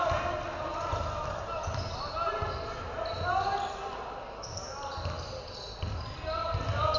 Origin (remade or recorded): recorded